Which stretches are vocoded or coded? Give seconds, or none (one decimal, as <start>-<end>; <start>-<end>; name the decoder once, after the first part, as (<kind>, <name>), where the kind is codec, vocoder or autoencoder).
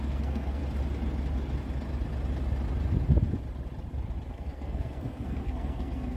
0.0-0.6 (codec, SNAC); 4.3-6.2